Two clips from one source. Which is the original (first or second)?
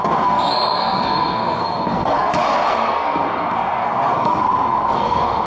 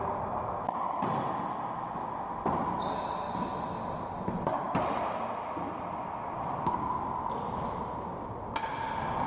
second